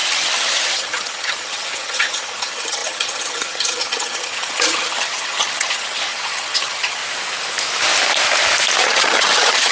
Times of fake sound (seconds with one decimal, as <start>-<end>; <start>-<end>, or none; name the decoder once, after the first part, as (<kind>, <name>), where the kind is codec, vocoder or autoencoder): 0.0-7.0 (vocoder, HiFi-GAN); 8.8-9.7